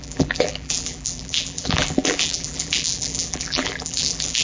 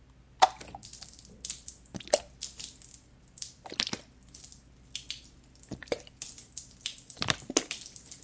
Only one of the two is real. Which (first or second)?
second